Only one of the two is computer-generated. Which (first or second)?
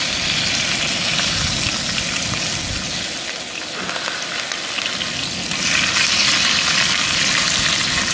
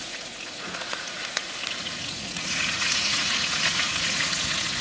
second